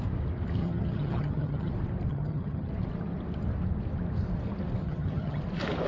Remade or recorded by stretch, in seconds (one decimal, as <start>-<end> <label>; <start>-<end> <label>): 0.0-0.6 recorded; 0.6-1.7 remade; 1.7-2.1 recorded; 2.1-2.7 remade; 2.7-4.8 recorded; 4.8-5.4 remade; 5.4-5.9 recorded